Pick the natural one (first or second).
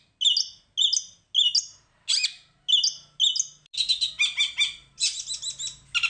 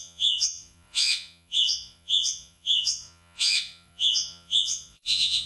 first